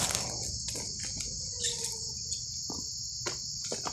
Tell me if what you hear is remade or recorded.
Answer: recorded